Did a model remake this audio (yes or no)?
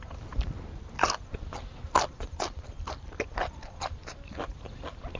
no